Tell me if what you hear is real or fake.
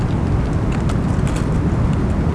real